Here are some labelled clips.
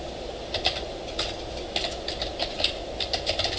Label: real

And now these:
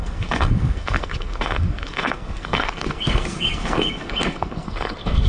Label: fake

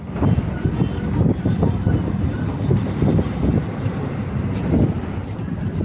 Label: real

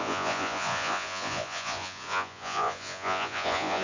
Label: fake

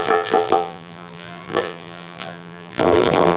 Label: fake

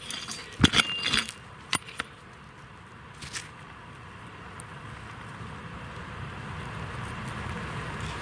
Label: real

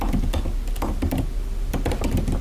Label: real